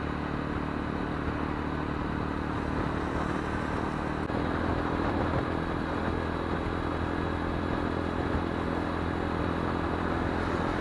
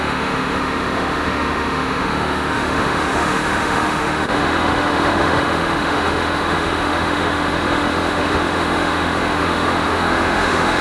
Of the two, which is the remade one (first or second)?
second